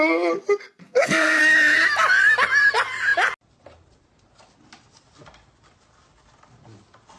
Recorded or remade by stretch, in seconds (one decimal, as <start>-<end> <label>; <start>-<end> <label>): 0.0-0.8 recorded; 0.8-1.4 remade; 1.4-7.2 recorded